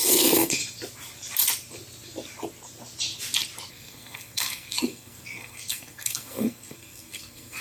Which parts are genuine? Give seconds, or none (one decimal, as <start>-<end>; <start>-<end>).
0.6-3.7